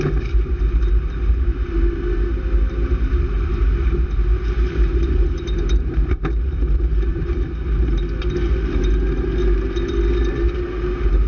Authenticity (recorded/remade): remade